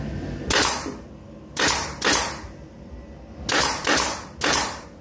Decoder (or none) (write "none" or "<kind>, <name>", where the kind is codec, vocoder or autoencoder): none